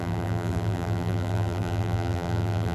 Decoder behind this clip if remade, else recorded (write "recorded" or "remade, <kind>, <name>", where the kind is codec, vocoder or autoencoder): remade, vocoder, BigVGAN v2